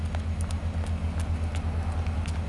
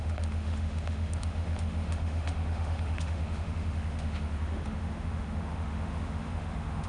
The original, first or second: first